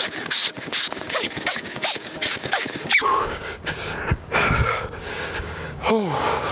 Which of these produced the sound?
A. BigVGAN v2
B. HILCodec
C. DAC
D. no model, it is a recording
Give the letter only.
C